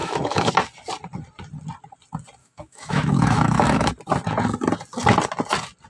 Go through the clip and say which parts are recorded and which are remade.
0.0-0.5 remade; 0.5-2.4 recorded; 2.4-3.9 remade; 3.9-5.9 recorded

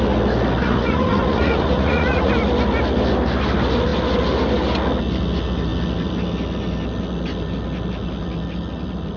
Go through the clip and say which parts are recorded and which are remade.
0.0-0.6 recorded; 0.6-2.3 remade; 2.3-9.2 recorded

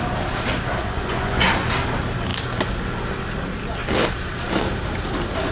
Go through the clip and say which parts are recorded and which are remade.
0.0-0.8 recorded; 0.8-1.5 remade; 1.5-5.5 recorded

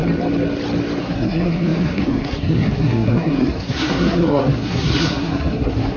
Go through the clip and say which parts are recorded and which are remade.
0.0-1.0 recorded; 1.0-6.0 remade

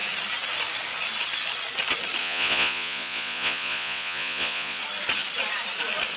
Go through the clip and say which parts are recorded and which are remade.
0.0-2.2 recorded; 2.2-4.8 remade; 4.8-6.2 recorded

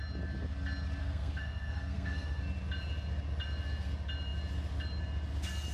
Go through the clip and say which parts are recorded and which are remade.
0.0-1.0 recorded; 1.0-2.4 remade; 2.4-5.7 recorded

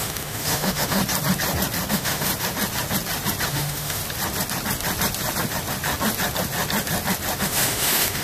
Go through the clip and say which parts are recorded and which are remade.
0.0-1.0 remade; 1.0-1.9 recorded; 1.9-2.3 remade; 2.3-3.5 recorded; 3.5-4.0 remade; 4.0-7.4 recorded; 7.4-8.2 remade